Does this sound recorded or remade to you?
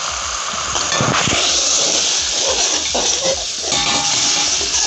recorded